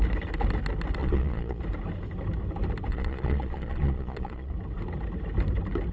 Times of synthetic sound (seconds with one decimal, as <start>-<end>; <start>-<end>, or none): 1.0-1.6; 2.9-4.5